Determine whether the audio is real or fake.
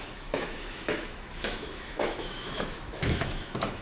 fake